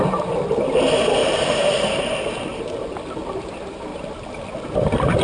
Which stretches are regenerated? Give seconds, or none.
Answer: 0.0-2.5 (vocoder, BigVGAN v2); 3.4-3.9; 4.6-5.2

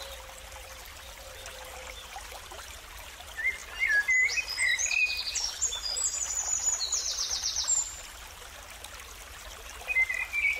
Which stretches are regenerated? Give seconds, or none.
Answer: none